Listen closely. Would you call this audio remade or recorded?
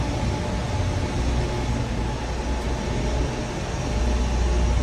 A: recorded